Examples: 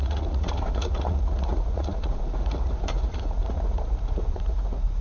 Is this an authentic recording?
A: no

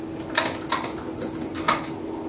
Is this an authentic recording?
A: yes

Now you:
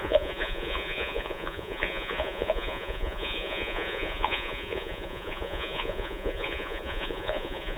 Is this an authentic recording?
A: no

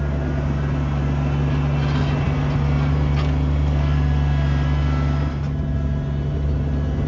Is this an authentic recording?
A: yes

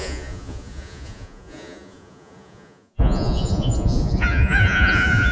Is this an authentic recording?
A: no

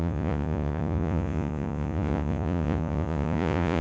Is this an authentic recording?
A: no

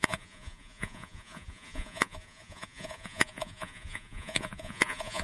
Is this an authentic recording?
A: no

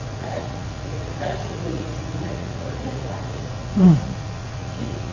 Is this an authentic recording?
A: no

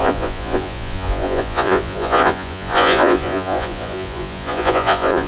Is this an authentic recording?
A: no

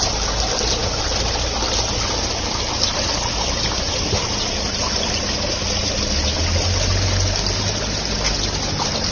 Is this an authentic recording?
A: yes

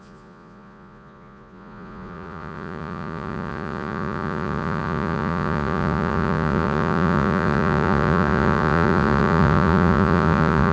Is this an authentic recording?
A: no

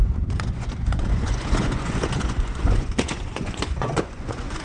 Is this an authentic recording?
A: no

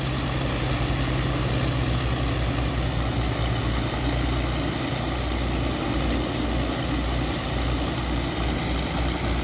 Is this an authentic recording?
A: yes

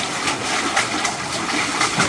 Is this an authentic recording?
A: yes